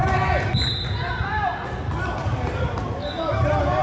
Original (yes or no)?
yes